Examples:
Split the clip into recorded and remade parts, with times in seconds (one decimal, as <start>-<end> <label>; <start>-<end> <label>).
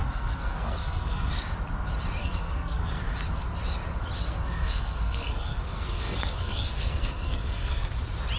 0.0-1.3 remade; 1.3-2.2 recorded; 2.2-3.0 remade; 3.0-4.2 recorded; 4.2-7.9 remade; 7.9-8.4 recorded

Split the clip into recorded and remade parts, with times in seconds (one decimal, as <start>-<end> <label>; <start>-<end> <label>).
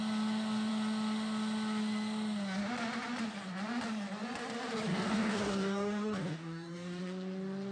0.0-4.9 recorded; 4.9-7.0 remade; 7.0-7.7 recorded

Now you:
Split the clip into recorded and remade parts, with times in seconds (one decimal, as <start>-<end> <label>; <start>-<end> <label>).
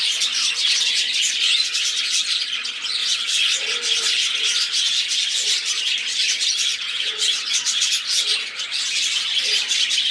0.0-3.0 recorded; 3.0-3.6 remade; 3.6-6.6 recorded; 6.6-7.9 remade; 7.9-10.1 recorded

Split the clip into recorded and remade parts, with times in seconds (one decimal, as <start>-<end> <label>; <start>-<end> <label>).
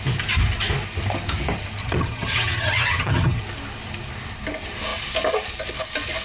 0.0-1.8 recorded; 1.8-3.4 remade; 3.4-6.2 recorded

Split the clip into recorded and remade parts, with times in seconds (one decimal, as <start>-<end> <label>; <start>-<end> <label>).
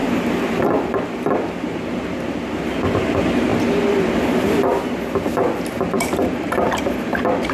0.0-7.5 recorded